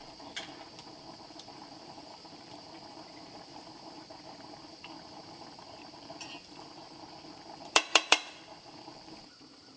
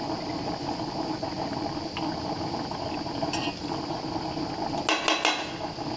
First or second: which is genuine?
second